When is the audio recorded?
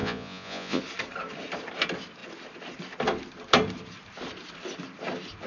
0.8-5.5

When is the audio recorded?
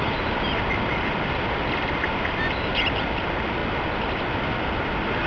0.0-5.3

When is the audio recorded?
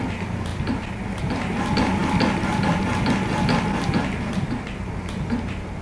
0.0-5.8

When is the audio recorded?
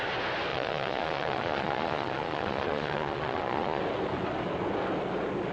0.0-0.5; 3.8-5.5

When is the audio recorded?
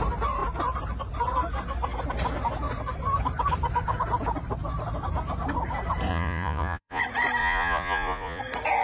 0.0-6.1; 7.0-7.4; 8.4-8.8